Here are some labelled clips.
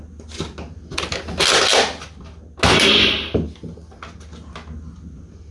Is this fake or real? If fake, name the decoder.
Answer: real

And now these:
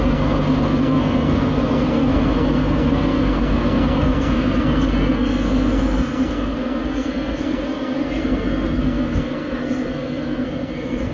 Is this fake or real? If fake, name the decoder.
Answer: fake, codec, SNAC